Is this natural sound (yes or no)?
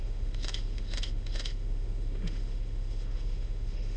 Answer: no